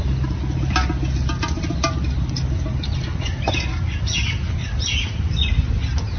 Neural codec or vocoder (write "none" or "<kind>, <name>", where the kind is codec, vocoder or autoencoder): none